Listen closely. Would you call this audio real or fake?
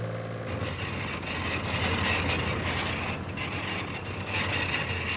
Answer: real